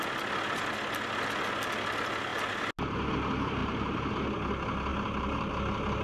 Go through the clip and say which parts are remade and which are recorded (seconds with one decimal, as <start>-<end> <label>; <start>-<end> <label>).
0.0-3.6 recorded; 3.6-4.1 remade; 4.1-4.9 recorded; 4.9-5.5 remade; 5.5-6.0 recorded